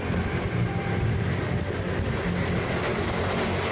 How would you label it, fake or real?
real